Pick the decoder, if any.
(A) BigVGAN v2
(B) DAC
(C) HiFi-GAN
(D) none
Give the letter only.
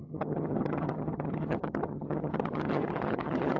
C